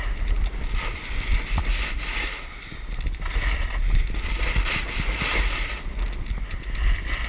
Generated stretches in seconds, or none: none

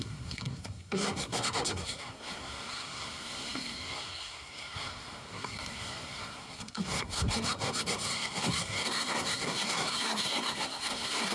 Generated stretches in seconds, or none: 0.0-11.3 (codec, SNAC)

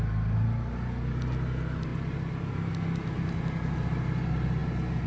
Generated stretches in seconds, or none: none

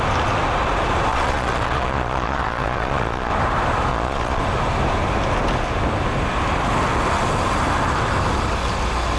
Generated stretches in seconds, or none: 1.1-3.3 (vocoder, Vocos); 3.9-4.4

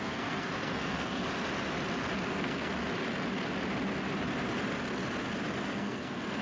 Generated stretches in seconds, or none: 0.0-1.2 (codec, SNAC); 2.3-2.8; 5.7-6.4

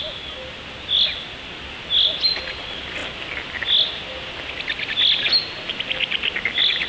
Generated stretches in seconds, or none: none

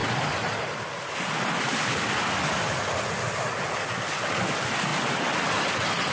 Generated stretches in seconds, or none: none